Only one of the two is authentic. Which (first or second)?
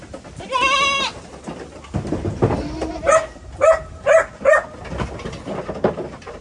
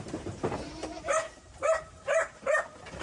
first